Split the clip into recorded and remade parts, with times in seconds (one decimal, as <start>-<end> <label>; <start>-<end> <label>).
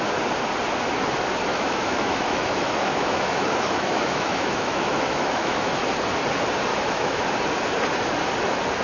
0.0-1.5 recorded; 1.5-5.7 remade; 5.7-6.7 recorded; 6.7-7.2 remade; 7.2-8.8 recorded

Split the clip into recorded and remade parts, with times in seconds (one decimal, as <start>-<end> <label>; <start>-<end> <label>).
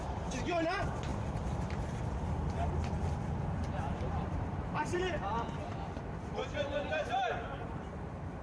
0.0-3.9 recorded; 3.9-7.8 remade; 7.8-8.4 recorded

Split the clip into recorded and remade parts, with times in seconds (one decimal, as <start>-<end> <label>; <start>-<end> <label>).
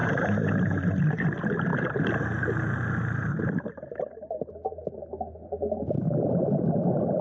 0.0-7.2 recorded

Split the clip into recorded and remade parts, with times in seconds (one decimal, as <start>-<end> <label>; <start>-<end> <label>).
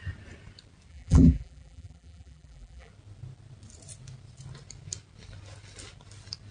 0.0-0.9 recorded; 0.9-2.9 remade; 2.9-6.5 recorded